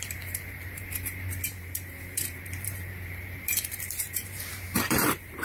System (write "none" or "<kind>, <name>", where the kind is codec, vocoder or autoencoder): vocoder, BigVGAN v2